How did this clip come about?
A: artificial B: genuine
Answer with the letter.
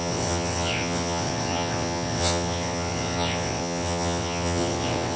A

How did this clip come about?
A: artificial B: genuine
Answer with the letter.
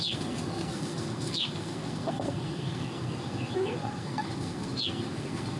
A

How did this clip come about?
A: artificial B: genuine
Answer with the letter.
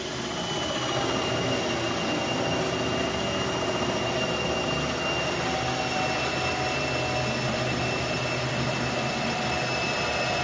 B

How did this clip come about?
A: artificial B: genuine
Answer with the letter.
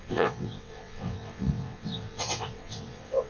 A